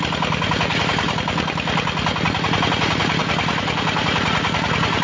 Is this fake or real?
real